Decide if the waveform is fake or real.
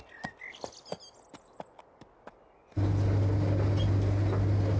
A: real